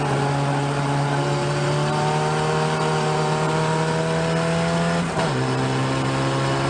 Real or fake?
real